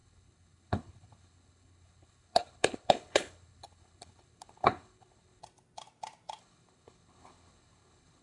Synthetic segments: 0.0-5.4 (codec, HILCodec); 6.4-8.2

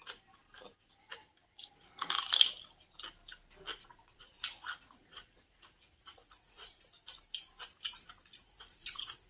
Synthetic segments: 1.2-1.9 (vocoder, Vocos); 3.7-6.8; 8.3-9.3

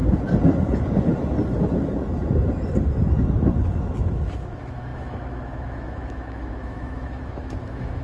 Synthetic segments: 4.2-8.0 (autoencoder, DAC-VAE)

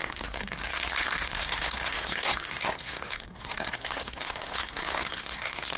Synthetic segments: 0.0-5.8 (codec, SNAC)

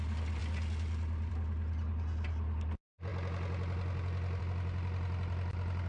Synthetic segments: none

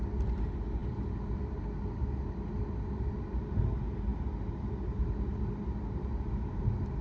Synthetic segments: none